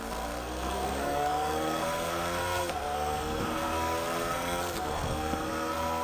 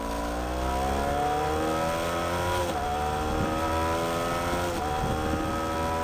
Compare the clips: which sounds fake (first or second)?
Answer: first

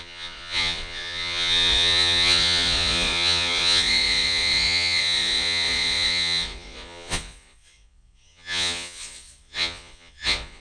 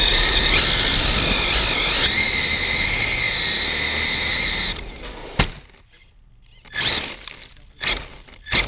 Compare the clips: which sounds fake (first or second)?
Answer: first